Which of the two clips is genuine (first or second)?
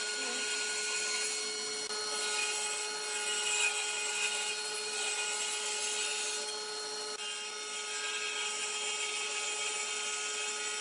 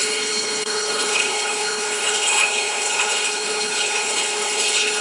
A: first